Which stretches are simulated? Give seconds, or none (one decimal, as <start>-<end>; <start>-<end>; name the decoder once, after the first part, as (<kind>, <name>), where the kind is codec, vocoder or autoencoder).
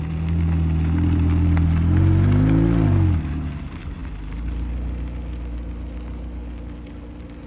none